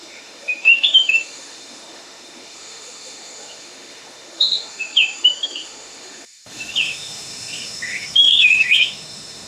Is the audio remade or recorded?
remade